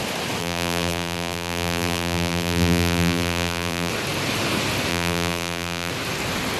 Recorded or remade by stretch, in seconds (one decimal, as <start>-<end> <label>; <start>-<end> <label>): 0.0-0.4 recorded; 0.4-3.9 remade; 3.9-4.9 recorded; 4.9-5.9 remade; 5.9-6.6 recorded